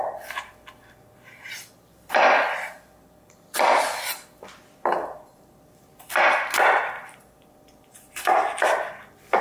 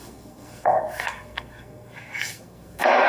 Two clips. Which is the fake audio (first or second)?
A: second